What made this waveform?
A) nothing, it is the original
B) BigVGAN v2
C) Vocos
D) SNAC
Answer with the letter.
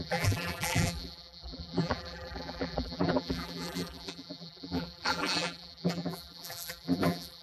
B